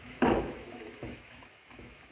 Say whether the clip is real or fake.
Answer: fake